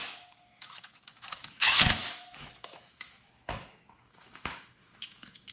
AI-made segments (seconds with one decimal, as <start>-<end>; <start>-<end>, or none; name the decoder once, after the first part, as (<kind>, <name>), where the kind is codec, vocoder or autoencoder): 0.0-5.5 (autoencoder, DAC-VAE)